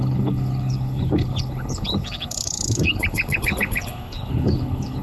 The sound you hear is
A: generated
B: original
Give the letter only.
A